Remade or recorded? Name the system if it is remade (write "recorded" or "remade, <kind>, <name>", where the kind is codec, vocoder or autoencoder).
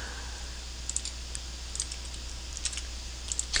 recorded